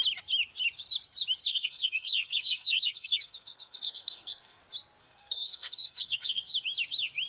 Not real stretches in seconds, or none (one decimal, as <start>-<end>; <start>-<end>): 1.5-4.6; 5.0-6.5